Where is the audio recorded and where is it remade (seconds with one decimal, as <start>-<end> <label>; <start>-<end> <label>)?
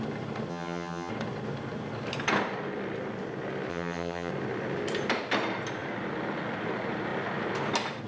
0.0-0.5 recorded; 0.5-1.1 remade; 1.1-3.7 recorded; 3.7-4.3 remade; 4.3-8.1 recorded